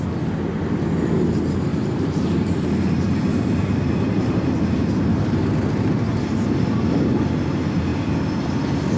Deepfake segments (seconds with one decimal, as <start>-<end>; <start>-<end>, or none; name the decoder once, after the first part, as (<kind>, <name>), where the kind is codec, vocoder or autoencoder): 1.7-5.4 (vocoder, BigVGAN v2)